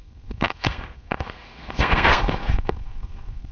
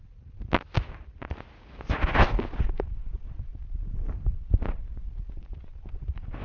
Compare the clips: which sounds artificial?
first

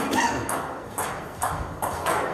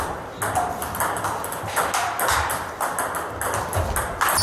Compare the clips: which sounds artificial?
first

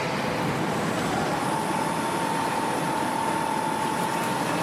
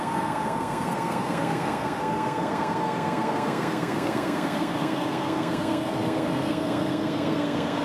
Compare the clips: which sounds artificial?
second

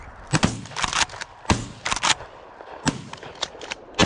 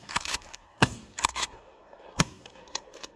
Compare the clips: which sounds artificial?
second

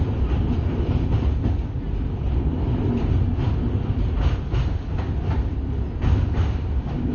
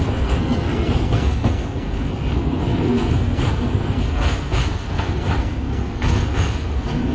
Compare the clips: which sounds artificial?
second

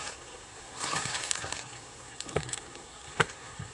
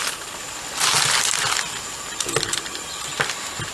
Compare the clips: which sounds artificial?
first